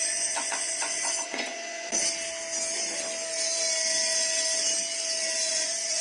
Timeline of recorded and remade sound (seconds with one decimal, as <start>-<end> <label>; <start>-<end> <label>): 0.0-1.9 remade; 1.9-5.5 recorded; 5.5-6.0 remade